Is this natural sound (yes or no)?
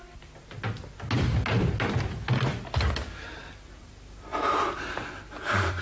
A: yes